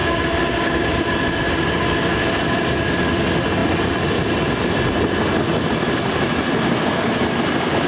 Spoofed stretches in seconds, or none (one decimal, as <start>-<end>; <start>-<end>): none